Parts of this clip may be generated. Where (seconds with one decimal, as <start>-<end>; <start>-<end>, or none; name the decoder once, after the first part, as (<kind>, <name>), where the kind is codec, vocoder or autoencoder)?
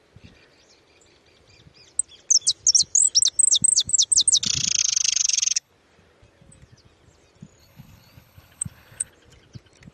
4.8-5.7 (codec, HILCodec); 7.6-9.1